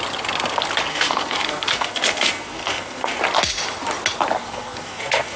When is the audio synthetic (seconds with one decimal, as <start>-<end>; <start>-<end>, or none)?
0.9-3.2; 4.4-5.4